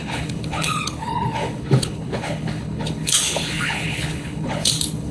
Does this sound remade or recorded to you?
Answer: remade